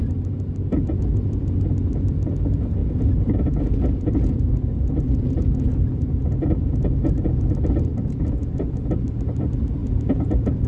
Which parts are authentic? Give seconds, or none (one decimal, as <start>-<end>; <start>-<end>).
0.0-0.7; 1.5-2.8; 7.5-7.9; 8.8-9.8